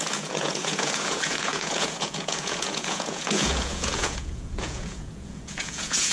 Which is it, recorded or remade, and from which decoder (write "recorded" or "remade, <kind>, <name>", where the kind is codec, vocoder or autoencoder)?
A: remade, vocoder, Vocos